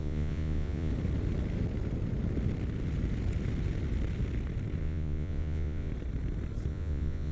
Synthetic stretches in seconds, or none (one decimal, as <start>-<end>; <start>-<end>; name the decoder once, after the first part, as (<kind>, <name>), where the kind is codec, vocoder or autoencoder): 0.0-0.9 (vocoder, Vocos); 4.8-5.9; 6.7-7.3